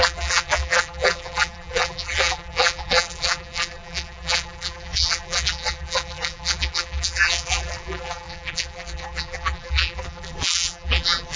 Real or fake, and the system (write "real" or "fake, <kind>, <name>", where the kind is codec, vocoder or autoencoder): fake, vocoder, BigVGAN v2